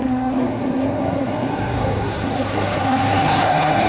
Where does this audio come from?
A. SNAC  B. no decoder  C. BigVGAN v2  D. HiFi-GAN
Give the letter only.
A